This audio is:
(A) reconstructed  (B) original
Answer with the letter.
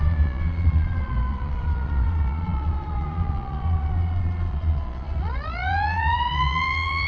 A